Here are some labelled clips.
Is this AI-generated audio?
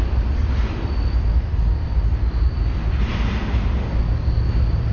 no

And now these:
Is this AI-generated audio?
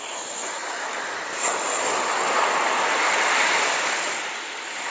no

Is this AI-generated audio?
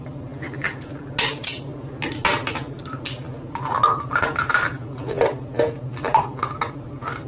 no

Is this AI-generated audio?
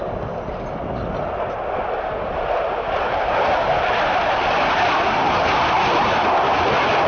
no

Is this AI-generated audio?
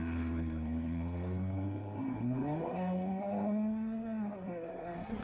yes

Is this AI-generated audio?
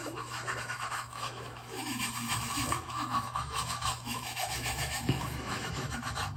yes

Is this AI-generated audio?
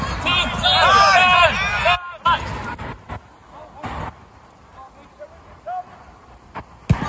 no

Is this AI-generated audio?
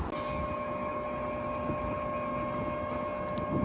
no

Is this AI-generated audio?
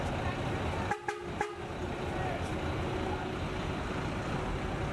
no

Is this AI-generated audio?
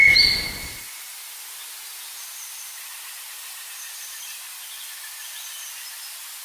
no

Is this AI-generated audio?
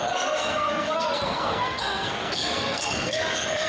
yes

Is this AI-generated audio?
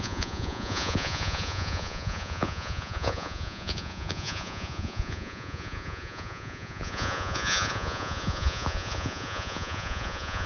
yes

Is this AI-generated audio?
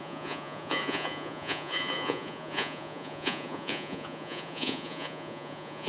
yes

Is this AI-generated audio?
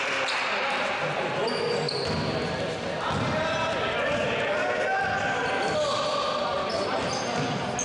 no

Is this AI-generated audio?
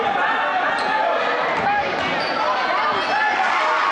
no